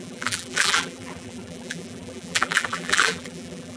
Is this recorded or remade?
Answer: remade